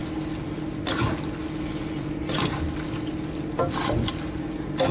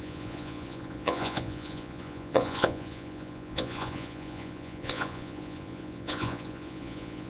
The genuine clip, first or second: first